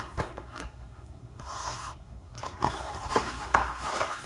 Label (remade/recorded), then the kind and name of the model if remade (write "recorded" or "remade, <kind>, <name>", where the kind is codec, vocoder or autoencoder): remade, codec, SNAC